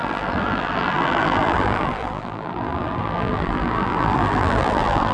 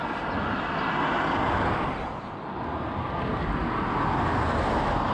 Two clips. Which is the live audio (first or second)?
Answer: second